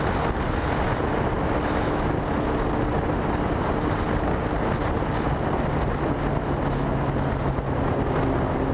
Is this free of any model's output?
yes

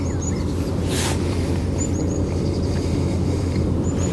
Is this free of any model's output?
yes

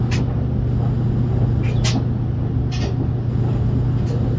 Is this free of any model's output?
yes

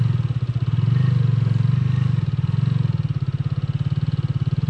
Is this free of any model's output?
yes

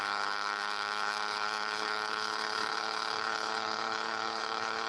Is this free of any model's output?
no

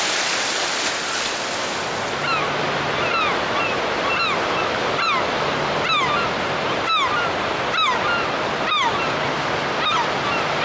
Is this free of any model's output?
yes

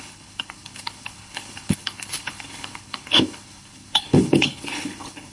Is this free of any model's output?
no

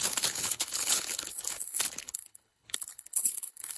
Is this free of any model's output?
no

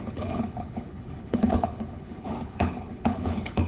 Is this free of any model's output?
no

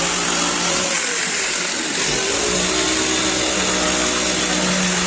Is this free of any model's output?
yes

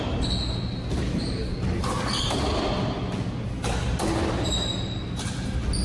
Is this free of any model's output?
yes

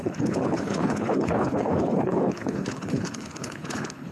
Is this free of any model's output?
no